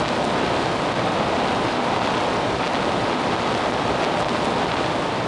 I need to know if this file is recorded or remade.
recorded